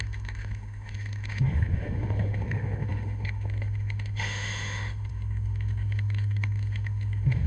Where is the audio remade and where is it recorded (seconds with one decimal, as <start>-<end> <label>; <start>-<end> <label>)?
0.0-7.5 remade